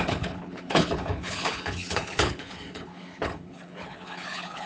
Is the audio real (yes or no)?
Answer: no